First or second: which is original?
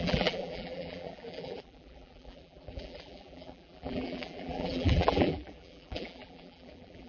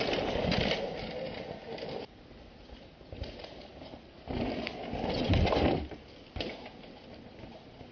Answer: second